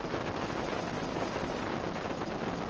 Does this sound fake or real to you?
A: real